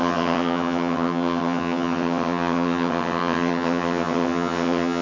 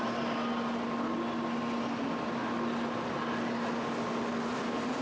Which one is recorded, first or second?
second